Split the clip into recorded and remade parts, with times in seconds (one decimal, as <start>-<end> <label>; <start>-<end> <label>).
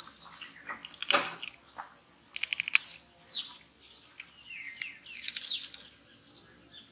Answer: 0.0-6.9 recorded